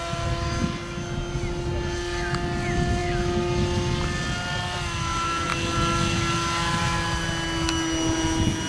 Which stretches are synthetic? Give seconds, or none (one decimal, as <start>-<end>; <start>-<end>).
none